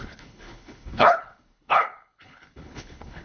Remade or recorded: remade